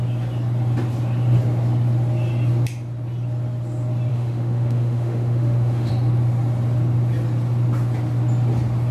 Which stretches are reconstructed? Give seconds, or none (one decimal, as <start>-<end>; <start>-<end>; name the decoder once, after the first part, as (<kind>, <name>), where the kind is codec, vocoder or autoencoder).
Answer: 4.1-5.9 (autoencoder, DAC-VAE)